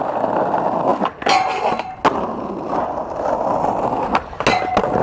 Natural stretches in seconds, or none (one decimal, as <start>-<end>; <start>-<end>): 0.0-5.0